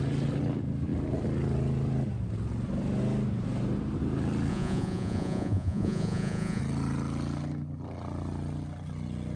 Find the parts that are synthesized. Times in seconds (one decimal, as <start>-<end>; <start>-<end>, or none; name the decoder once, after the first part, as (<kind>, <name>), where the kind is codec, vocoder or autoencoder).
4.5-6.6 (vocoder, Vocos)